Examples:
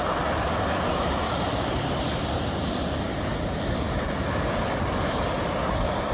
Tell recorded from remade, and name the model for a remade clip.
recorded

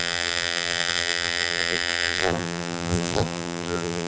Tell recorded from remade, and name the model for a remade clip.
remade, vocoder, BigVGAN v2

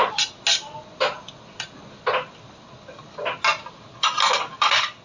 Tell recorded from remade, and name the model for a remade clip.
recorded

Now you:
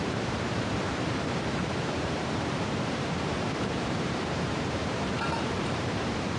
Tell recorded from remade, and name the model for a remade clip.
remade, vocoder, BigVGAN v2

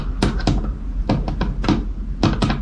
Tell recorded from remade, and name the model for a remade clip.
recorded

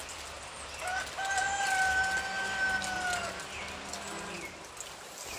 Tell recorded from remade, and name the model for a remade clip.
recorded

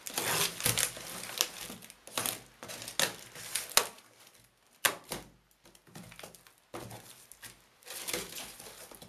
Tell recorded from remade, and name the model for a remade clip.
recorded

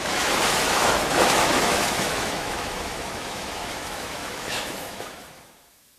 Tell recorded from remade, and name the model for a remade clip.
remade, autoencoder, DAC-VAE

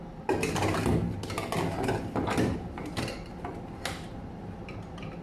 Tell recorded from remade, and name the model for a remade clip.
recorded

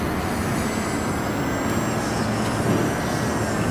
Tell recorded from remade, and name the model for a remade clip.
recorded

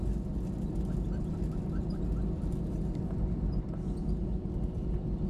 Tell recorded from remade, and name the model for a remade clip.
recorded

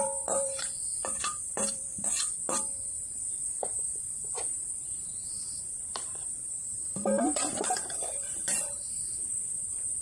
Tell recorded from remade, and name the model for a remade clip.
remade, vocoder, BigVGAN v2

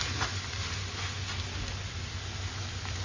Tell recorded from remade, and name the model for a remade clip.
recorded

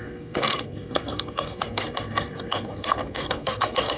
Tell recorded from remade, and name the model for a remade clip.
remade, codec, SNAC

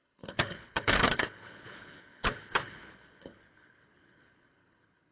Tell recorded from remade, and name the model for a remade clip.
remade, codec, HILCodec